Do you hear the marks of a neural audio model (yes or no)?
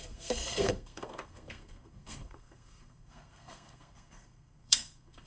yes